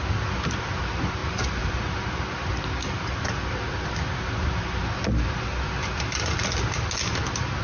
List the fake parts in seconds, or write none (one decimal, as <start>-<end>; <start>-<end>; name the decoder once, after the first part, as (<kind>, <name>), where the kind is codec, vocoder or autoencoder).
none